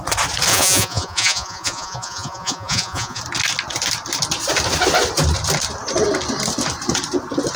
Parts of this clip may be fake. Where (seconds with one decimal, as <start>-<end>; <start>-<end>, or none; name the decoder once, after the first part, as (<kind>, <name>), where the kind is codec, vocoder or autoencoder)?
0.5-3.2 (vocoder, Vocos)